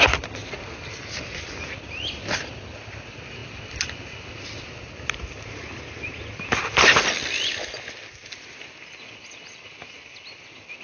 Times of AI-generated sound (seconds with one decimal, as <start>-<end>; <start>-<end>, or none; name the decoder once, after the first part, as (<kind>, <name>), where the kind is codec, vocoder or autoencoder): none